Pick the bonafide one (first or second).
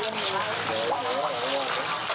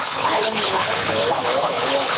first